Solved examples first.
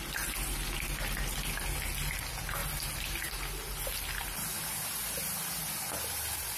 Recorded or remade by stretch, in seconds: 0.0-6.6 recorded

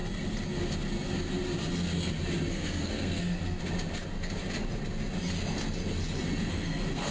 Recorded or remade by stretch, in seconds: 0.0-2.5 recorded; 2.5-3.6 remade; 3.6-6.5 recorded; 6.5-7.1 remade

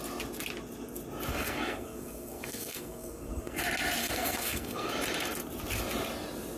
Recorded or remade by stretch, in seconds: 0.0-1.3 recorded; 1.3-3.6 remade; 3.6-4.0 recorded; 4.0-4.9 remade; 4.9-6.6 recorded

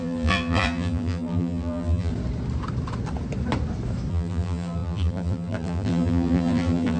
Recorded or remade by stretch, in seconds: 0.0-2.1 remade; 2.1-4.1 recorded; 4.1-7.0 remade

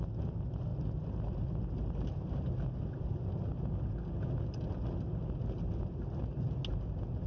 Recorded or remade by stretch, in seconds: 0.0-7.3 recorded